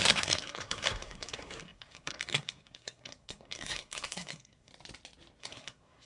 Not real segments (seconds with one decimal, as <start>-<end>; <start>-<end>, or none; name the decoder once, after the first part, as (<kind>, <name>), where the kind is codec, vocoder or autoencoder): 0.0-4.7 (codec, SNAC); 5.4-6.1